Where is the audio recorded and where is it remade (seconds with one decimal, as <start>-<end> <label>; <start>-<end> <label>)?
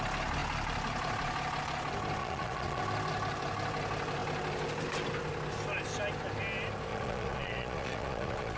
0.0-2.2 recorded; 2.2-2.8 remade; 2.8-6.9 recorded; 6.9-8.6 remade